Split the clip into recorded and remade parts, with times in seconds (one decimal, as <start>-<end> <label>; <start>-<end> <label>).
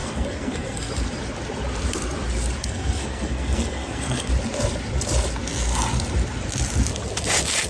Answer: 0.0-0.9 remade; 0.9-2.6 recorded; 2.6-4.3 remade; 4.3-7.7 recorded